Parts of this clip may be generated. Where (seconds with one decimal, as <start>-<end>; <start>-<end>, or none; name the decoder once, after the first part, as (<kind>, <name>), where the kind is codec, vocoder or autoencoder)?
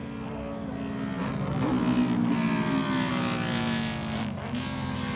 none